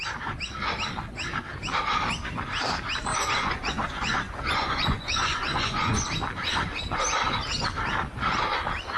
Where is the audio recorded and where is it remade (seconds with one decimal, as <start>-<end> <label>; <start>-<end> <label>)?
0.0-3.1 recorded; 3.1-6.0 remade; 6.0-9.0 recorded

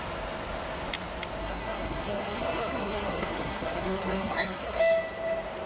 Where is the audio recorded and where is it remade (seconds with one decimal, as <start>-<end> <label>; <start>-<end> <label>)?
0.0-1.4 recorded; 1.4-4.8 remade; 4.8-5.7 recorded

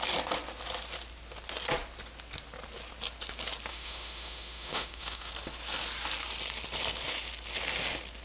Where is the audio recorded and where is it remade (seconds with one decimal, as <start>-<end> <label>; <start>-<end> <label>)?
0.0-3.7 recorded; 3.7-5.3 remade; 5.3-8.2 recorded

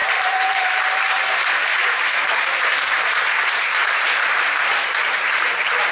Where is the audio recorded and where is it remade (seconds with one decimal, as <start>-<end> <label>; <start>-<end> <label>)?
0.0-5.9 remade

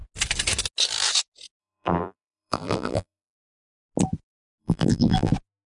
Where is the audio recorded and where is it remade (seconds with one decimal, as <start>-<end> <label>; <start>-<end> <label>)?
0.0-1.6 recorded; 1.6-3.5 remade; 3.5-4.6 recorded; 4.6-5.3 remade; 5.3-5.8 recorded

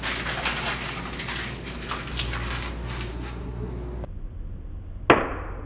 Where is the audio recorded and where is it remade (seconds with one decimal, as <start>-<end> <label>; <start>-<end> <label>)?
0.0-3.1 recorded; 3.1-3.7 remade; 3.7-5.7 recorded

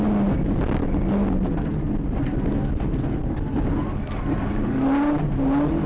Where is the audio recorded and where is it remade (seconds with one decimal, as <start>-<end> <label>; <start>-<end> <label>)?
0.0-5.9 recorded